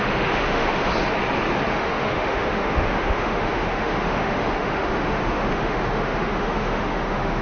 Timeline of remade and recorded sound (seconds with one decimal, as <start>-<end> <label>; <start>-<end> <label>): 0.0-0.9 remade; 0.9-1.7 recorded; 1.7-7.4 remade